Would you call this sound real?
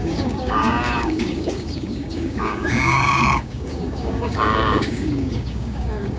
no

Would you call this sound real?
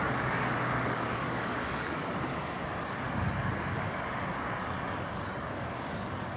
no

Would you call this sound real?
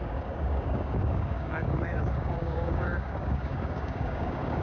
no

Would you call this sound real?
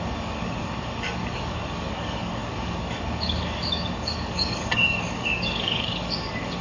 no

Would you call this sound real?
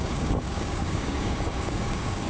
no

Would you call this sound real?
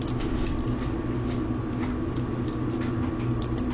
yes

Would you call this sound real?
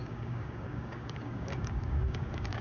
no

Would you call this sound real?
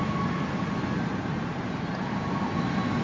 yes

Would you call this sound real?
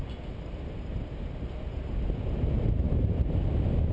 yes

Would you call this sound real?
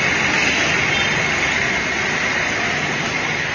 yes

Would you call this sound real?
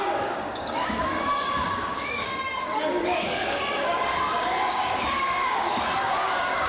no